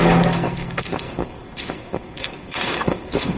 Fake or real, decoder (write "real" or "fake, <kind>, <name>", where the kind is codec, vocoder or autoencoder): fake, codec, SNAC